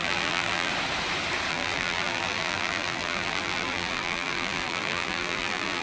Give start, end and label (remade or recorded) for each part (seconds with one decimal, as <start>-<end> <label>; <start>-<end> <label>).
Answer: 0.0-0.7 remade; 0.7-1.5 recorded; 1.5-5.8 remade